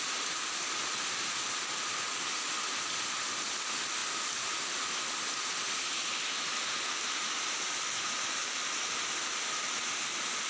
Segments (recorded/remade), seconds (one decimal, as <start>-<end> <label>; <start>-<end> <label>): 0.0-10.5 recorded